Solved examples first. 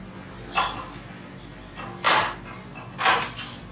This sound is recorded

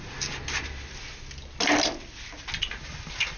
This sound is recorded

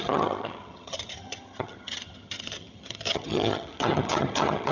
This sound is remade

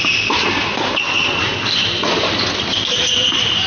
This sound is recorded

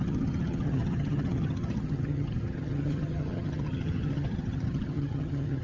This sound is remade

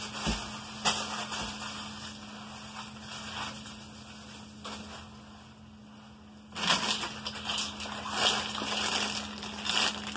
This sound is recorded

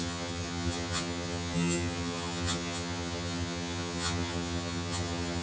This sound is remade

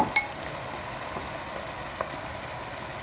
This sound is recorded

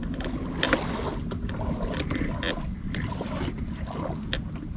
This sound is recorded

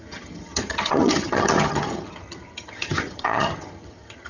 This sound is remade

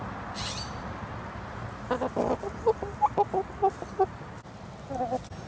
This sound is recorded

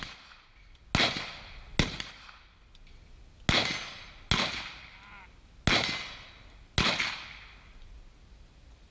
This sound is recorded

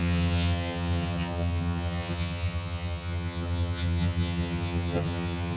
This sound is remade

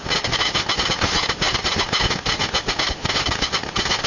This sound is recorded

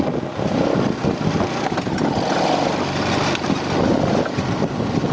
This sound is recorded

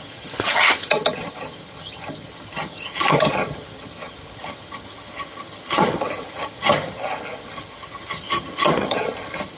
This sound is remade